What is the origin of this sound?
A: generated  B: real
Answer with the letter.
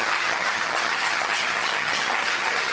A